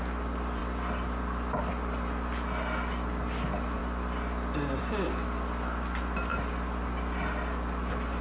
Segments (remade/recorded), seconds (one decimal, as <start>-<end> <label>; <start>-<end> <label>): 0.0-8.2 recorded